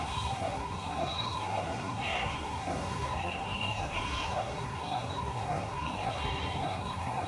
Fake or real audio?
fake